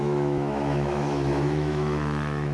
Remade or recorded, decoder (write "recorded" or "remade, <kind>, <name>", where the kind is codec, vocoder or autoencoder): remade, autoencoder, DAC-VAE